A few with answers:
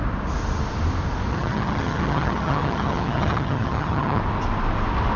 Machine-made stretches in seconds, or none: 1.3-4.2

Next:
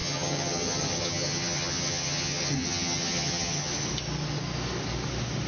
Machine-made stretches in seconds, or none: 0.0-3.7

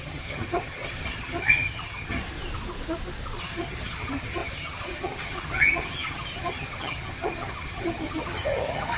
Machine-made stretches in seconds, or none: 0.0-2.2; 3.4-9.0

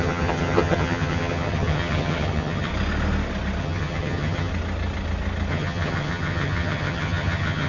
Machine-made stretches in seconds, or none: 0.0-2.7; 3.6-4.5; 5.5-7.7

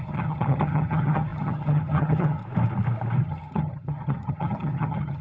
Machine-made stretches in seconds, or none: 0.0-2.4; 3.2-5.2

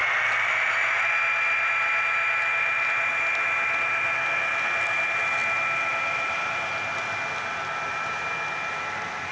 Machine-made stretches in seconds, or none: none

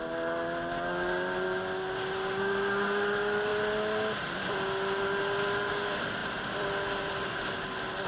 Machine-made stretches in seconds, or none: none